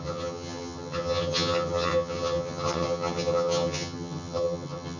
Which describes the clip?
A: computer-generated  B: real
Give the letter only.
A